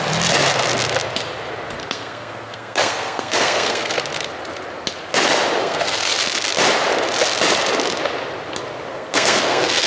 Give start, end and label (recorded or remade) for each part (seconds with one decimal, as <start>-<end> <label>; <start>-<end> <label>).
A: 0.0-1.8 recorded; 1.8-4.0 remade; 4.0-5.6 recorded; 5.6-6.2 remade; 6.2-8.9 recorded; 8.9-9.9 remade